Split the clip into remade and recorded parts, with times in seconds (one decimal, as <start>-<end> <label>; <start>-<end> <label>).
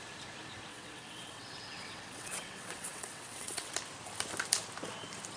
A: 0.0-0.7 recorded; 0.7-3.7 remade; 3.7-5.4 recorded